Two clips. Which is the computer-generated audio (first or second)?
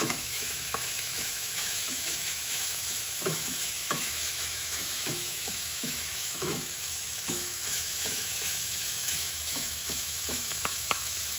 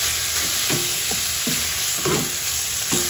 first